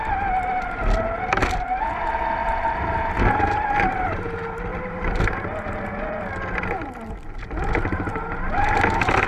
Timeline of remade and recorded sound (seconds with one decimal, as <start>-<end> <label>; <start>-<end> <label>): 0.0-2.4 recorded; 2.4-3.1 remade; 3.1-4.7 recorded; 4.7-5.2 remade; 5.2-9.3 recorded